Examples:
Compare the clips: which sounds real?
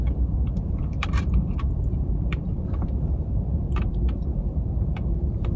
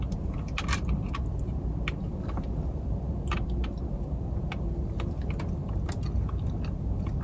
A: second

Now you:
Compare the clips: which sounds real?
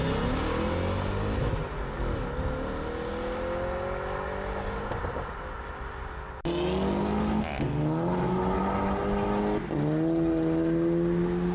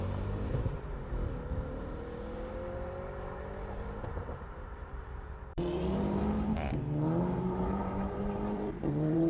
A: first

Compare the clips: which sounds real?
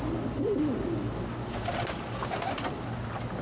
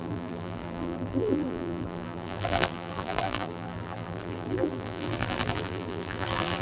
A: first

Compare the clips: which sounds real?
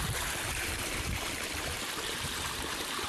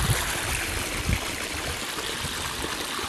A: second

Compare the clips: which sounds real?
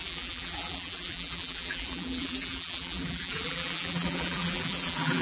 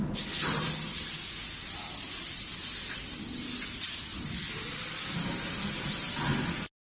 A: second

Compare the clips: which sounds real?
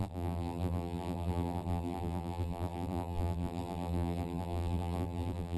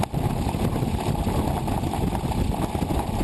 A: second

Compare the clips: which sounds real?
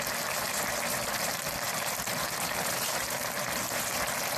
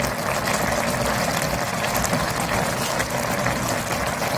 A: second